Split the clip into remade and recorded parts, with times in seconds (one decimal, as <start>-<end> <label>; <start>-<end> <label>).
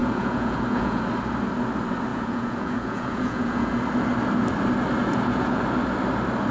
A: 0.0-1.1 remade; 1.1-2.1 recorded; 2.1-3.8 remade; 3.8-5.0 recorded; 5.0-5.6 remade; 5.6-6.5 recorded